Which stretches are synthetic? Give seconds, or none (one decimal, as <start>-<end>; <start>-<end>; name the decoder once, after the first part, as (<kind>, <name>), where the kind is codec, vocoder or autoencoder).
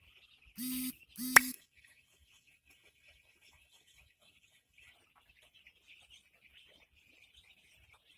1.4-4.9 (autoencoder, DAC-VAE)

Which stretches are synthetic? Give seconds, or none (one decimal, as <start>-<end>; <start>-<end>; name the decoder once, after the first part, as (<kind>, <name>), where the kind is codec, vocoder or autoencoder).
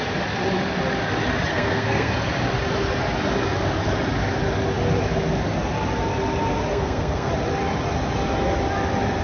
1.5-2.1 (codec, SNAC); 6.7-7.3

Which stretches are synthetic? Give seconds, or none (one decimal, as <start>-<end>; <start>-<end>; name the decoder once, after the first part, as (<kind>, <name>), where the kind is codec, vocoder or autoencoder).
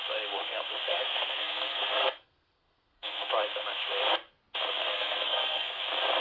0.9-3.3 (codec, SNAC); 4.9-5.8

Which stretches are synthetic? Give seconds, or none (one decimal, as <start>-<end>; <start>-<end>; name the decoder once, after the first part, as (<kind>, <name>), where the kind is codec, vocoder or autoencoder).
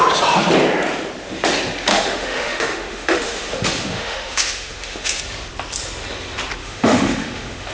1.9-5.2 (autoencoder, DAC-VAE); 6.6-7.7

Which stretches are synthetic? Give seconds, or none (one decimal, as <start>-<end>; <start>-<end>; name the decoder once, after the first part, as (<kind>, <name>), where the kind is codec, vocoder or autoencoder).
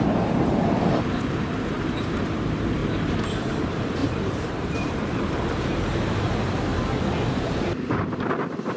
0.0-2.8 (vocoder, BigVGAN v2); 3.6-6.7; 7.3-8.8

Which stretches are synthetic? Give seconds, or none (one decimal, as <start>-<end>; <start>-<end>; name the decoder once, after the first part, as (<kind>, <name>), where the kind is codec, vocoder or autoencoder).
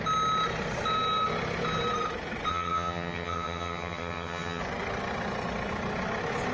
2.5-4.6 (vocoder, HiFi-GAN)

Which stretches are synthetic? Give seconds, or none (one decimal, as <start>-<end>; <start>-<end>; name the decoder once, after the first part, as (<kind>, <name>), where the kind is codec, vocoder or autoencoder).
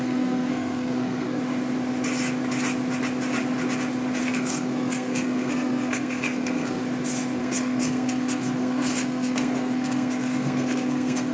0.0-1.4 (codec, SNAC); 4.2-6.8; 7.4-11.3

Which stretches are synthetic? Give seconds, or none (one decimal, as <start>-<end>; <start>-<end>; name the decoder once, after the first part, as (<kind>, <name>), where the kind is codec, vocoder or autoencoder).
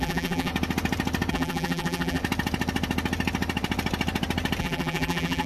0.0-0.5 (vocoder, BigVGAN v2); 1.3-2.2; 4.6-5.5